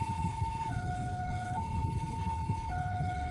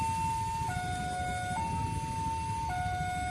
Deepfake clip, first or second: first